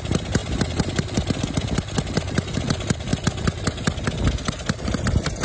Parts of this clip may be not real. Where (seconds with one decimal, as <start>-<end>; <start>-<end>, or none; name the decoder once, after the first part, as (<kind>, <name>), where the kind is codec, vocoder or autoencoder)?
none